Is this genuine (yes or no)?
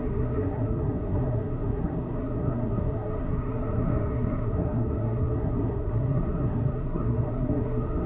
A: no